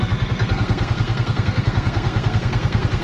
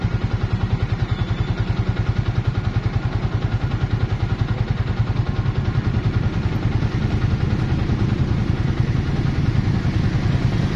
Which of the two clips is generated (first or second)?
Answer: first